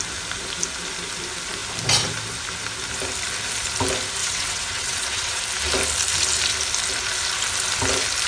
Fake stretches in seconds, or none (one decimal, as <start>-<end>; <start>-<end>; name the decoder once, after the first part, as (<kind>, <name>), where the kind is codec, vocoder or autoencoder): 4.2-5.4 (vocoder, WaveNeXt)